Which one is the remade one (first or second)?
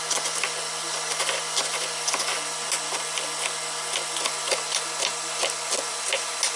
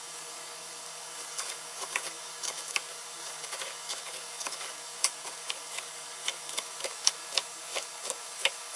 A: second